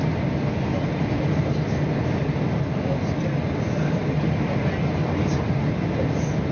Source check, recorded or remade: recorded